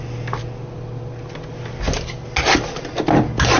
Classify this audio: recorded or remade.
recorded